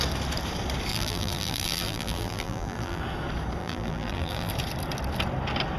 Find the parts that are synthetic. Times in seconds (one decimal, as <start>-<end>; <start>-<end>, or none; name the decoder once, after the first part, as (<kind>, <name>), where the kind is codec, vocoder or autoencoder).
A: 0.9-3.0 (vocoder, BigVGAN v2); 3.6-4.5